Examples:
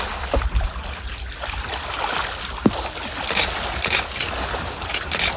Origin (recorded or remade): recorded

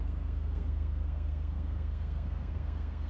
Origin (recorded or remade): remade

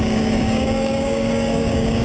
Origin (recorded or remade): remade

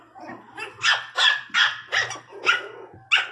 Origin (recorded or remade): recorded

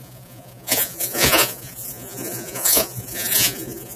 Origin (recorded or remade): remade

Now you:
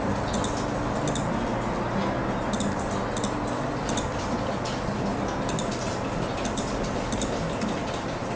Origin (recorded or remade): recorded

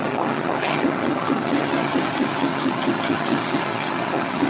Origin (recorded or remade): remade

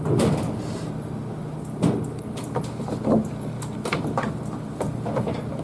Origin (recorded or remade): recorded